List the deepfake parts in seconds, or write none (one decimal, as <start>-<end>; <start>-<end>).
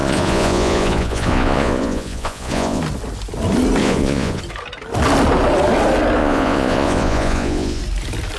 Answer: 0.0-2.8; 3.8-4.4; 6.2-7.8